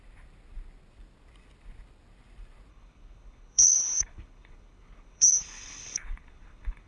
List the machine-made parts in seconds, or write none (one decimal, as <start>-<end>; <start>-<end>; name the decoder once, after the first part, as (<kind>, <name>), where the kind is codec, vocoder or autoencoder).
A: 2.7-6.9 (codec, HILCodec)